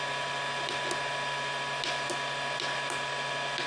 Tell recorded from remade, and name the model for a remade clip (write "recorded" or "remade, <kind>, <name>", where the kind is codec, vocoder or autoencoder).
recorded